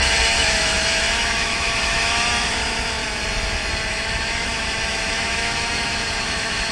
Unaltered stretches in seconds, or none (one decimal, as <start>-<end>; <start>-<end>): 3.0-3.9